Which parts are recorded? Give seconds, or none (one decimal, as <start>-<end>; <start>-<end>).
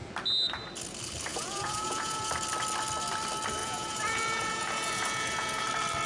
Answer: 0.0-1.3; 2.3-3.6; 5.6-6.1